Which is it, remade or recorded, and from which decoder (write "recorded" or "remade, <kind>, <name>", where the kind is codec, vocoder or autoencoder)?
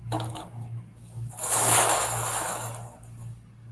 remade, codec, DAC